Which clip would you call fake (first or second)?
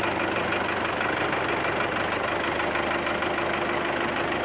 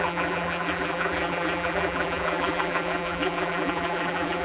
second